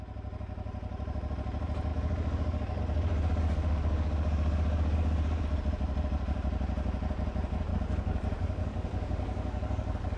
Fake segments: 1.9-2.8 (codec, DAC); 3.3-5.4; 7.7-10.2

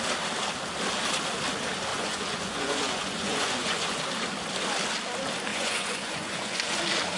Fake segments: 1.9-4.0 (vocoder, Vocos); 5.5-6.8

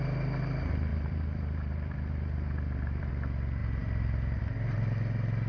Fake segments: 0.9-3.1 (vocoder, BigVGAN v2); 3.6-4.4

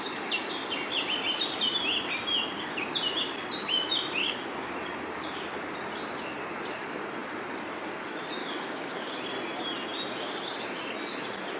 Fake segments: 4.2-4.7 (codec, DAC); 8.4-9.1

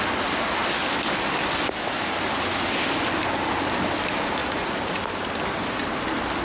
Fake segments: 4.4-5.0 (vocoder, Vocos)

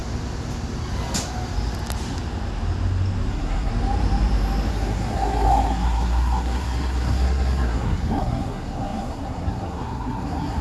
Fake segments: 3.3-3.7 (codec, SNAC); 4.7-10.6